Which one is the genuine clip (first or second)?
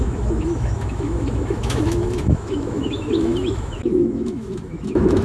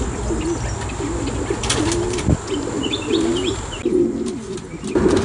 second